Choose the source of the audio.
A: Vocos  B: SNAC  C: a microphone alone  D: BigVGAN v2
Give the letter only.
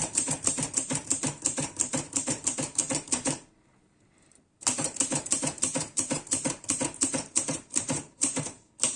D